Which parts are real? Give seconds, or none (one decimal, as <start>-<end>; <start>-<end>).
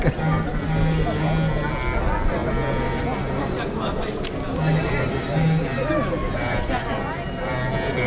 0.0-8.1